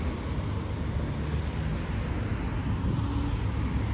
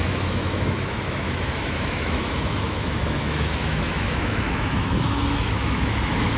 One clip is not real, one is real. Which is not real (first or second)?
second